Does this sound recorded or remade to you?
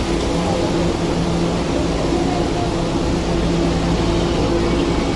recorded